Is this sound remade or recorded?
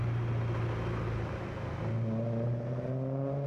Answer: recorded